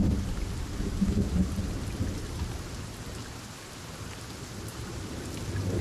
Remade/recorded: recorded